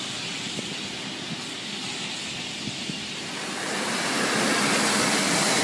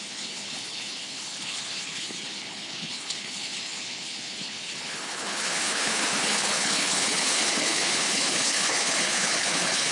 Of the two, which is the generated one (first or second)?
second